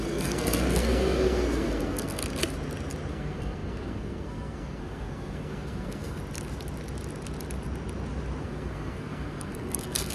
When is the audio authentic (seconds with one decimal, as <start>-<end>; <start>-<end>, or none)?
2.2-3.1; 6.2-8.4